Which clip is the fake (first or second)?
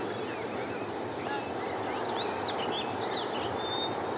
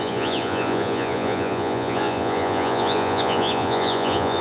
second